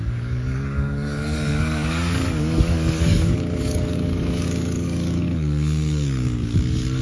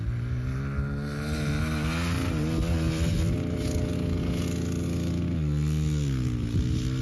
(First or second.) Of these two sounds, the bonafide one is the second